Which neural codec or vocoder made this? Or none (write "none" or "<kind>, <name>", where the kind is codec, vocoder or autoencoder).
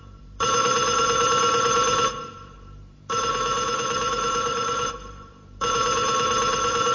vocoder, BigVGAN v2